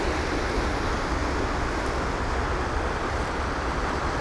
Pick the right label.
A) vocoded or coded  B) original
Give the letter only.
B